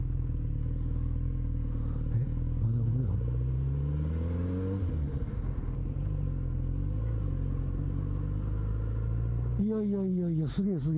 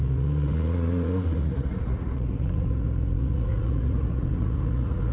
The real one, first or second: first